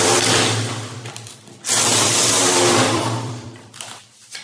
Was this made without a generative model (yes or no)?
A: no